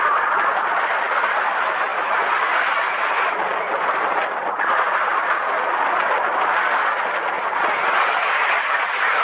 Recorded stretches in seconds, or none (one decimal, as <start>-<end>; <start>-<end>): 0.0-9.2